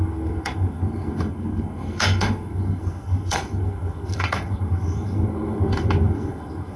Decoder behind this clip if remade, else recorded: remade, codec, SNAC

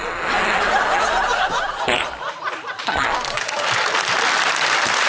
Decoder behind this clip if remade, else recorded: recorded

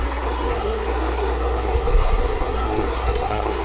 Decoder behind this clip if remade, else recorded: remade, codec, SNAC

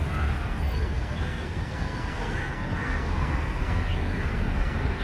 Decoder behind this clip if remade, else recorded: remade, codec, SNAC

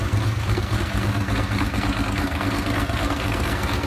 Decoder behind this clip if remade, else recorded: remade, codec, SNAC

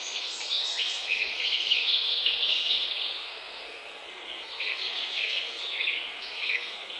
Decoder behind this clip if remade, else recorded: remade, codec, SNAC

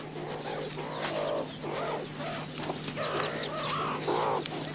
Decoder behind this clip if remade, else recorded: recorded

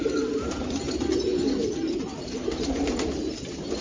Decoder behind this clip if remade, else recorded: recorded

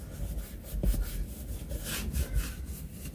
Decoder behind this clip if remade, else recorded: recorded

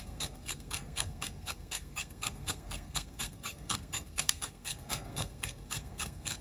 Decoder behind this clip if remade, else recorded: remade, codec, SNAC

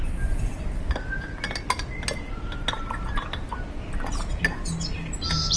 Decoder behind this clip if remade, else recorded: recorded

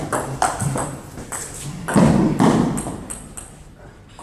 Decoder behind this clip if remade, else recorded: recorded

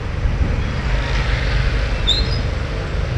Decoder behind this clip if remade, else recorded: recorded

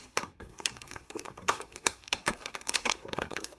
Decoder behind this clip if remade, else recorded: remade, codec, SNAC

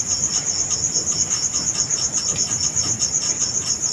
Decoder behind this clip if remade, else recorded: recorded